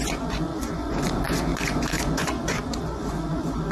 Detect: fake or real fake